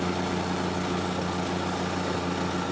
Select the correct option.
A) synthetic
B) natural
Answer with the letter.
B